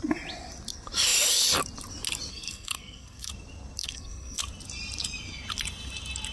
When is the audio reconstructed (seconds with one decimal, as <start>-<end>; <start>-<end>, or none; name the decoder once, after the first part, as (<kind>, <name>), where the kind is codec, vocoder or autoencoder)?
2.3-3.3 (codec, SNAC); 3.8-4.4

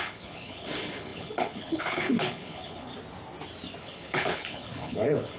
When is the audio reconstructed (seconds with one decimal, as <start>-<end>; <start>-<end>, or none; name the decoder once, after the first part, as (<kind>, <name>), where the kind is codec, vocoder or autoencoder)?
0.0-2.9 (codec, HILCodec); 3.8-5.4

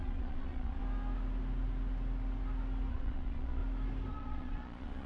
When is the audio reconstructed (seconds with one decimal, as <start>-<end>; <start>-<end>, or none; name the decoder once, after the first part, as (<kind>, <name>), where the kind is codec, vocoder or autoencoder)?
0.0-0.8 (vocoder, Vocos); 2.9-3.6; 4.1-5.1

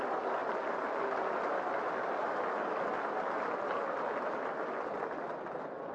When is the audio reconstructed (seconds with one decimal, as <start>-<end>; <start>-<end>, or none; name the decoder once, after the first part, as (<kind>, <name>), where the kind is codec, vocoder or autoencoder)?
none

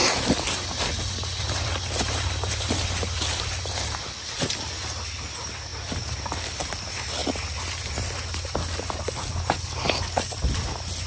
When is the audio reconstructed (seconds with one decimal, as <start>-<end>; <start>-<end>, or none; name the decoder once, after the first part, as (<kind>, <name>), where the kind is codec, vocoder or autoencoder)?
none

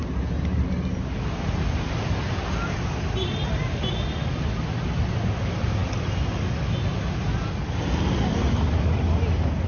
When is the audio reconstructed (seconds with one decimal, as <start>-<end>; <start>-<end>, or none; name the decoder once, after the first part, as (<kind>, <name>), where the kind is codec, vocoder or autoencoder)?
none

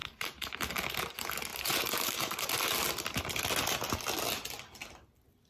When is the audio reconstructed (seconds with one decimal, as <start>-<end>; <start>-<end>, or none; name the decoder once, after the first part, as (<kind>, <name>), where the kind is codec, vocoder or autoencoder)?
0.0-0.6 (vocoder, BigVGAN v2); 1.5-2.6